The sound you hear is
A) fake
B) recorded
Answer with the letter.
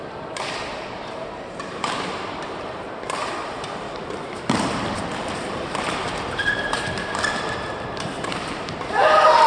A